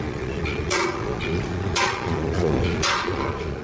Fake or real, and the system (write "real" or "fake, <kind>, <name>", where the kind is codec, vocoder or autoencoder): fake, vocoder, Vocos